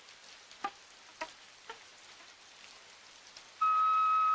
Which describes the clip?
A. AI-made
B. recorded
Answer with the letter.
B